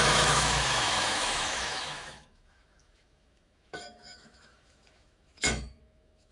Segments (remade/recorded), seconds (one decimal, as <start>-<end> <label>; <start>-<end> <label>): 0.0-6.3 remade

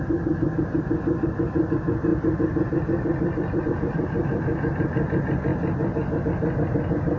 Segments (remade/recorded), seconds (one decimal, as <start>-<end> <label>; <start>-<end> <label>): 0.0-7.2 recorded